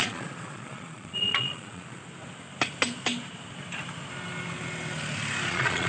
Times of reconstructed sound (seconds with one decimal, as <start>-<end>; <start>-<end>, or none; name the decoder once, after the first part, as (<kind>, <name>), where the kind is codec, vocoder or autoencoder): 0.0-2.0 (vocoder, Vocos); 5.5-5.9

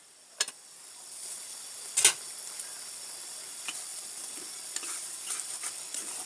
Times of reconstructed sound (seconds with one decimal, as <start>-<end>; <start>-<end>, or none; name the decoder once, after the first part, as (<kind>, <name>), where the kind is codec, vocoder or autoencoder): none